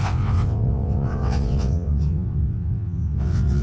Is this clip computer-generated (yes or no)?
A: yes